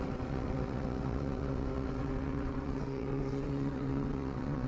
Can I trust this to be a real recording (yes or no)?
no